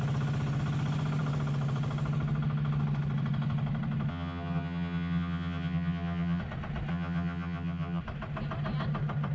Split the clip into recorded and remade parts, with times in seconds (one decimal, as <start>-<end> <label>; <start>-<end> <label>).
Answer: 0.0-4.1 recorded; 4.1-6.4 remade; 6.4-6.9 recorded; 6.9-8.0 remade; 8.0-9.3 recorded